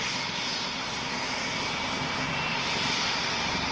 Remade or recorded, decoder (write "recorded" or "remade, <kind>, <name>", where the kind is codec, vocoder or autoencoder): recorded